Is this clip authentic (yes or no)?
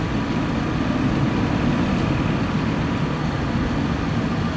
yes